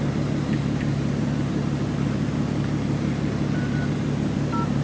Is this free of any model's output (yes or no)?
yes